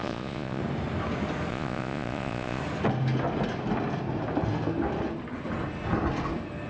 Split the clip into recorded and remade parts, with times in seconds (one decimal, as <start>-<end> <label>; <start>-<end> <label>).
0.0-0.6 remade; 0.6-1.5 recorded; 1.5-2.6 remade; 2.6-6.7 recorded